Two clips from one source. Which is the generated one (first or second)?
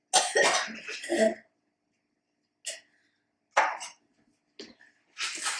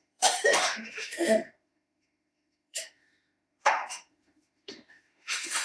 second